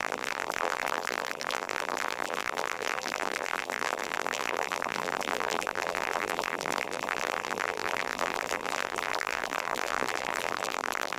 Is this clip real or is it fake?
fake